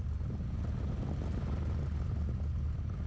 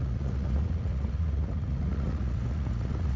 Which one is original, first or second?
first